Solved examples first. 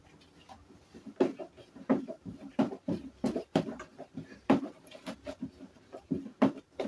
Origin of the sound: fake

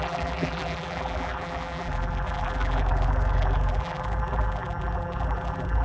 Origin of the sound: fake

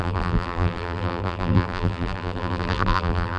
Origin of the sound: fake